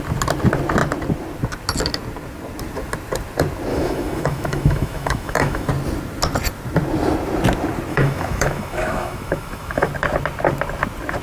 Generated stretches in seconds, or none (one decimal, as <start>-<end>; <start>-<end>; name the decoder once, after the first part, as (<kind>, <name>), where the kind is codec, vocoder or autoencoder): 3.7-5.7 (autoencoder, DAC-VAE); 7.9-9.9